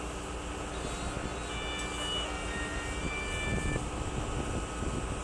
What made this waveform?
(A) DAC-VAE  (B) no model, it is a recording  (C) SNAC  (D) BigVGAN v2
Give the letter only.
B